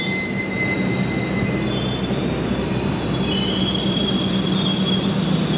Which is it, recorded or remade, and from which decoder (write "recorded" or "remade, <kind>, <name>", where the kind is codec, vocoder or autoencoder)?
recorded